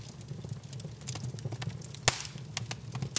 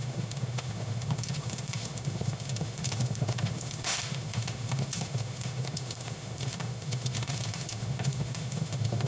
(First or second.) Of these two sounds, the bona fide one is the first